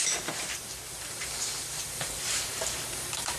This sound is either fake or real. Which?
fake